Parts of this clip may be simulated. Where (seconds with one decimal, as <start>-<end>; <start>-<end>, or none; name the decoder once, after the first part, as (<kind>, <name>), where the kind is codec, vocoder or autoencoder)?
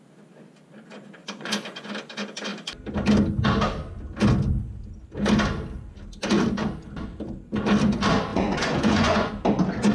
1.2-1.9 (vocoder, Vocos); 8.3-9.3